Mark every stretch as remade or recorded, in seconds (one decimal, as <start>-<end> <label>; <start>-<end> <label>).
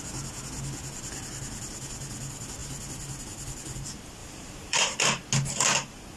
0.0-4.2 recorded; 4.2-5.0 remade; 5.0-6.2 recorded